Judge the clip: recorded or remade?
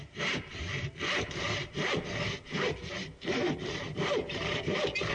remade